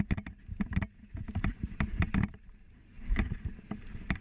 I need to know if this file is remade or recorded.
recorded